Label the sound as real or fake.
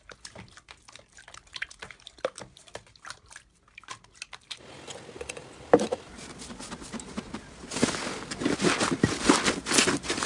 real